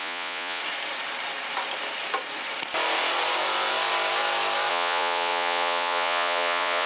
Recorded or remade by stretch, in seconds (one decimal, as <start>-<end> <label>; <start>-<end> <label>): 0.0-0.6 remade; 0.6-4.7 recorded; 4.7-6.9 remade